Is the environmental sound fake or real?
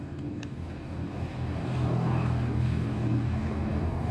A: fake